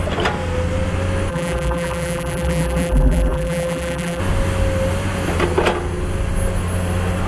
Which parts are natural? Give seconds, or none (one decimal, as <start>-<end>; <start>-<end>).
0.0-1.3; 4.2-7.3